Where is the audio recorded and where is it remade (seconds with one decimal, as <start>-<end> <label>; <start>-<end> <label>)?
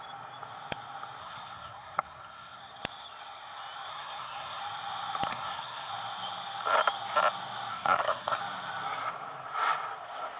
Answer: 0.0-1.2 recorded; 1.2-2.6 remade; 2.6-3.9 recorded; 3.9-4.6 remade; 4.6-5.3 recorded; 5.3-5.9 remade; 5.9-7.7 recorded; 7.7-8.4 remade; 8.4-10.4 recorded